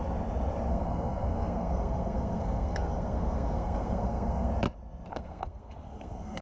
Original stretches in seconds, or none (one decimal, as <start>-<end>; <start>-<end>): 0.0-0.7; 4.5-5.1